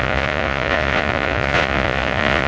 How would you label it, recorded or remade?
remade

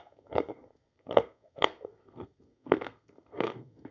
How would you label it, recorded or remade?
remade